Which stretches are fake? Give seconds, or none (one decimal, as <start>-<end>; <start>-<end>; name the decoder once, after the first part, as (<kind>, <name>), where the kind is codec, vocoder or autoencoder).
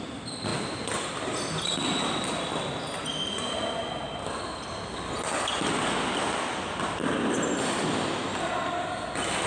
none